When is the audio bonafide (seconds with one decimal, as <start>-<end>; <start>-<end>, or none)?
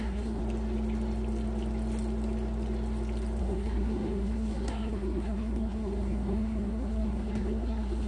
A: 0.4-3.4